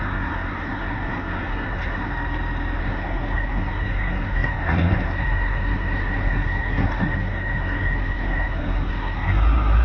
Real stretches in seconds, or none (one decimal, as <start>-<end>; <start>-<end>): 2.1-2.8